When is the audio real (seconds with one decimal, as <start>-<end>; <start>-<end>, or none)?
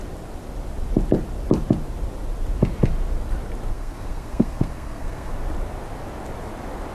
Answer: 0.0-3.7; 5.3-6.9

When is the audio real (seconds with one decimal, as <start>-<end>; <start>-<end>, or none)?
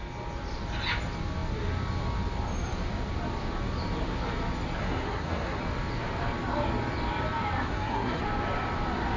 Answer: 0.0-4.8; 5.6-7.6; 8.2-9.2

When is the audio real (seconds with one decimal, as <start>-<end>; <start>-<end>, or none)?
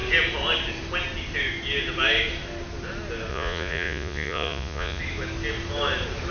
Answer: 0.0-3.3; 5.0-6.3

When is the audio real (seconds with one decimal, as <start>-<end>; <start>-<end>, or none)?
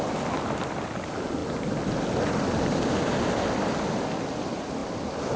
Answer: 0.0-5.4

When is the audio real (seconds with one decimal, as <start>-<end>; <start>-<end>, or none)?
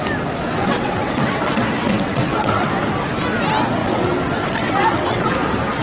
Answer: 0.0-0.6; 2.7-3.8; 5.3-5.8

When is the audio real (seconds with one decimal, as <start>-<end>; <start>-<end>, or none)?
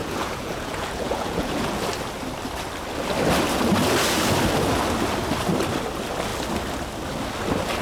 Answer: 1.8-7.8